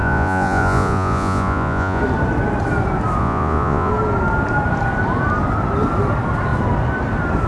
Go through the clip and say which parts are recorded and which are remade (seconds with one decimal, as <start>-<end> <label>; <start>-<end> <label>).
0.0-2.0 remade; 2.0-3.2 recorded; 3.2-3.9 remade; 3.9-7.5 recorded